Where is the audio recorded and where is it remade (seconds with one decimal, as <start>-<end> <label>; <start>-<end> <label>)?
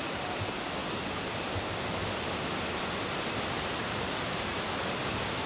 0.0-5.5 recorded